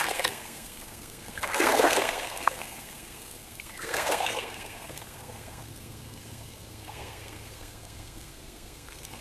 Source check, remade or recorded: remade